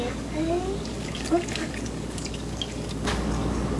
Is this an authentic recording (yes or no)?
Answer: no